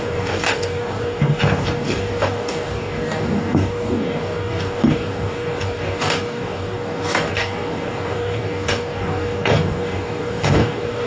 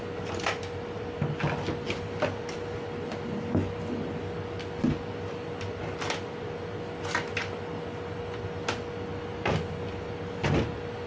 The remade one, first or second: first